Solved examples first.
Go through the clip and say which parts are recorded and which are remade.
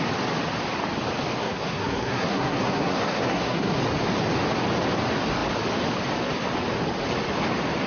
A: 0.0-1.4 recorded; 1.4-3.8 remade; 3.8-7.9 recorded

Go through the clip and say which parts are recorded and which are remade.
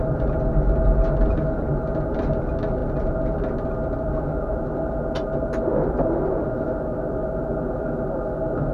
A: 0.0-8.7 recorded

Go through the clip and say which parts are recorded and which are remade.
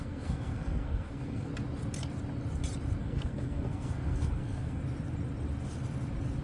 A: 0.0-1.5 remade; 1.5-3.0 recorded; 3.0-4.8 remade; 4.8-6.4 recorded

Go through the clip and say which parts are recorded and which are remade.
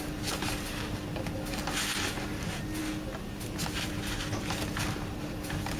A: 0.0-5.8 recorded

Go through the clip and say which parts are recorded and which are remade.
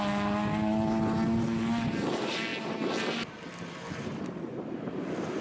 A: 0.0-5.4 recorded